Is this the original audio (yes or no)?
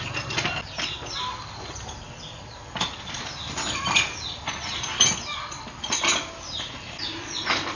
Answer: yes